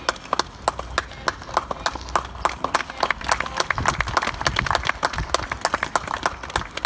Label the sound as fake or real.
real